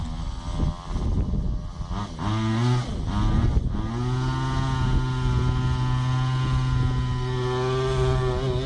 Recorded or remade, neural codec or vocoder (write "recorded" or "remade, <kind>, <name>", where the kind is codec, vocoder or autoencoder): recorded